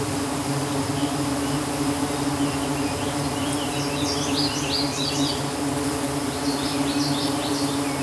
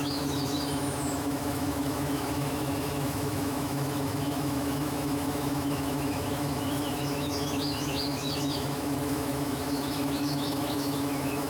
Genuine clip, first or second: first